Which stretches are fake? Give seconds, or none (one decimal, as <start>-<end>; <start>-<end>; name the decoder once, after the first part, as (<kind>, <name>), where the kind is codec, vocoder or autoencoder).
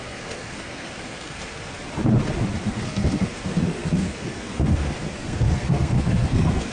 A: 0.0-1.8 (codec, SNAC); 2.7-6.7